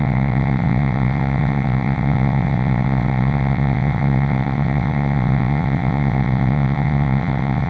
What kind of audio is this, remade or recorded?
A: remade